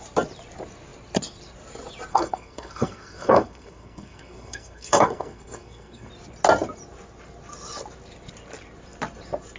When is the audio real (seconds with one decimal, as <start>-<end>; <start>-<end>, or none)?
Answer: 0.0-2.1; 6.1-9.6